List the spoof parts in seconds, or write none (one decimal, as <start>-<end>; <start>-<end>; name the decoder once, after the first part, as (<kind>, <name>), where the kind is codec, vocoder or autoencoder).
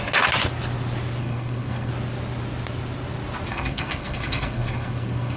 1.2-1.9 (codec, SNAC); 3.5-5.4